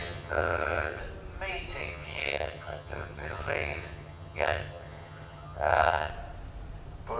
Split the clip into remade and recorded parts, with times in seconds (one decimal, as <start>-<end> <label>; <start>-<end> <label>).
0.0-1.0 remade; 1.0-1.8 recorded; 1.8-6.1 remade; 6.1-7.2 recorded